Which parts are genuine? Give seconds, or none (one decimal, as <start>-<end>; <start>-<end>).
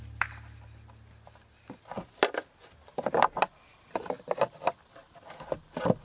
0.0-6.0